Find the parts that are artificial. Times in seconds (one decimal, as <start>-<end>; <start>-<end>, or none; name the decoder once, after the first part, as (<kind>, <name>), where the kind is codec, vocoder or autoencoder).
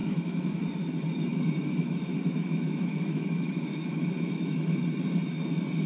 0.0-0.6 (autoencoder, DAC-VAE); 1.3-4.8